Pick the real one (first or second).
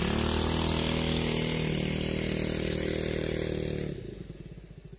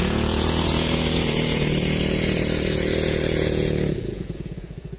first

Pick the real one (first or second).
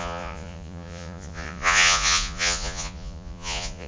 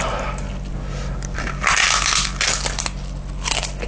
second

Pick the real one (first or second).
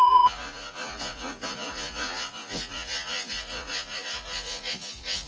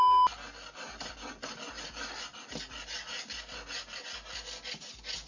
second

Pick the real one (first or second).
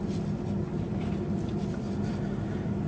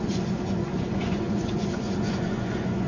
first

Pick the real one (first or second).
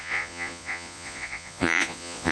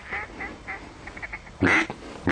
second